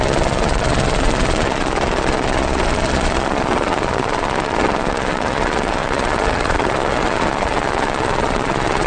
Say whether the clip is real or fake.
fake